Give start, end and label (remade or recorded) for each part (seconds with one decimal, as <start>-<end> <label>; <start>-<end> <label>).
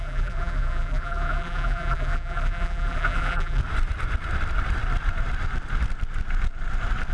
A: 0.0-3.6 remade; 3.6-7.1 recorded